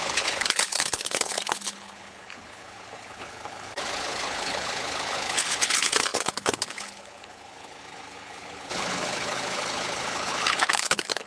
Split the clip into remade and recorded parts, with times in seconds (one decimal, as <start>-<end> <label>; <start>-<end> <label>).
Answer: 0.0-11.3 remade